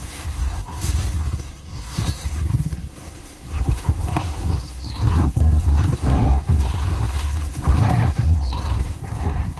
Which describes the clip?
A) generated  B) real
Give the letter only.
A